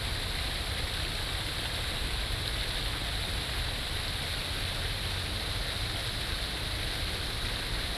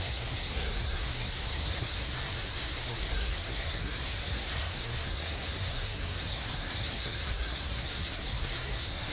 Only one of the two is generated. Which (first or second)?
second